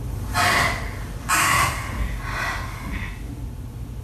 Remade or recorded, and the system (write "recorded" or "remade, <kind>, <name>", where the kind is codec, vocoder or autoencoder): recorded